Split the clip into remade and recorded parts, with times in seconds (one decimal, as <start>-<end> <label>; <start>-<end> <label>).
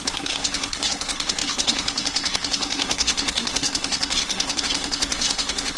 0.0-5.8 remade